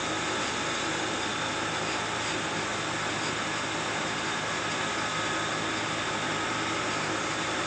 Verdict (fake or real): real